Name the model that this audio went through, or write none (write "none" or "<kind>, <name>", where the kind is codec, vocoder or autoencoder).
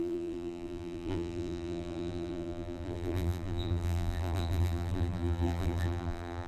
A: vocoder, BigVGAN v2